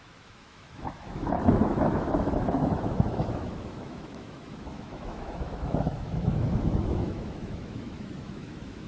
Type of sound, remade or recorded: remade